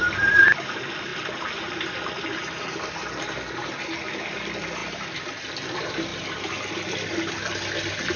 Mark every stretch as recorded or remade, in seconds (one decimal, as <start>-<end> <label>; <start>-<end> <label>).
0.0-8.2 remade